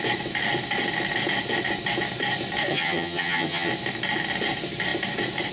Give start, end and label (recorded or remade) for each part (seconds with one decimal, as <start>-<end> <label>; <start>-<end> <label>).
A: 0.0-2.7 recorded; 2.7-3.7 remade; 3.7-5.5 recorded